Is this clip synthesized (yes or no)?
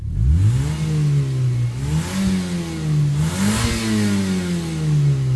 no